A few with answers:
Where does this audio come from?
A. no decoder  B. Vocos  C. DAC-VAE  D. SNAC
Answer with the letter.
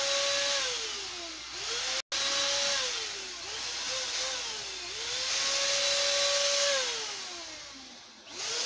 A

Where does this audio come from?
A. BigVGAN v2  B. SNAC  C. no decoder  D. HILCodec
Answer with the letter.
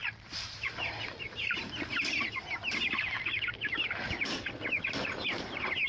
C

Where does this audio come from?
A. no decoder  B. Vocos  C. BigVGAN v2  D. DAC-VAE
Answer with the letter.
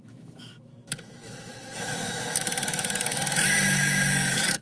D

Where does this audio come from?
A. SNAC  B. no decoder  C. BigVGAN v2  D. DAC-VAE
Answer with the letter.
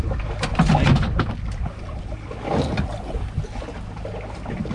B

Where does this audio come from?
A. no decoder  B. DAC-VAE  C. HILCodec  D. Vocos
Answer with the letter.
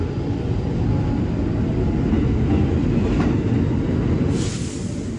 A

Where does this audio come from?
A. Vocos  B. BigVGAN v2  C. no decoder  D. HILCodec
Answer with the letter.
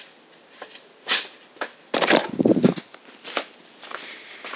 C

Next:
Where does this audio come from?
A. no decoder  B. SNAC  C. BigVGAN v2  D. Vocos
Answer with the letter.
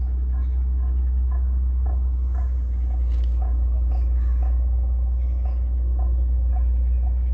A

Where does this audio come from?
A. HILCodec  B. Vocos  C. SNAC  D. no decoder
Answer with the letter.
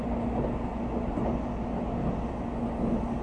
D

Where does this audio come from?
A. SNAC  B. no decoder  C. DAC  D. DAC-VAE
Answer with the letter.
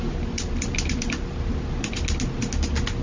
B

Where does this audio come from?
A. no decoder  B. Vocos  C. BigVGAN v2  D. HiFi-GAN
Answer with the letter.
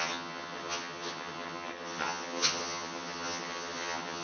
D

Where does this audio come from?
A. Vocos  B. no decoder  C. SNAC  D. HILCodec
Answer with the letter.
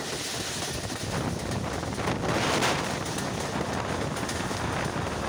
B